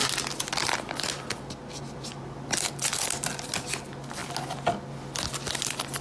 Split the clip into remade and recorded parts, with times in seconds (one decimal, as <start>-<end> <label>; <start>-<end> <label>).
0.0-6.0 recorded